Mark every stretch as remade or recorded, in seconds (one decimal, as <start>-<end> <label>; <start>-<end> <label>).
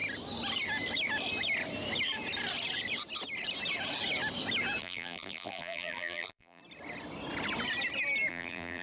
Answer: 0.0-4.8 recorded; 4.8-6.6 remade; 6.6-8.3 recorded; 8.3-8.8 remade